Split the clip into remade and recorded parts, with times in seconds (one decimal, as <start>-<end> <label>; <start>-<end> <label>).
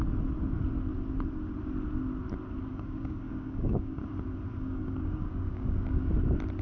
0.0-2.7 recorded; 2.7-4.0 remade; 4.0-4.5 recorded; 4.5-6.1 remade; 6.1-6.6 recorded